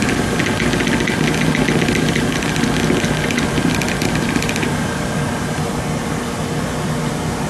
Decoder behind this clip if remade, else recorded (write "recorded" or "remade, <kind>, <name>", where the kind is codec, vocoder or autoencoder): recorded